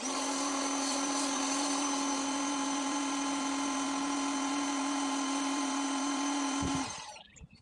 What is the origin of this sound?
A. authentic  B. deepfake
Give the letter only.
B